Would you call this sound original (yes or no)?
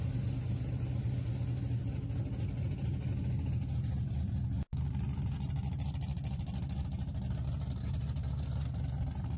yes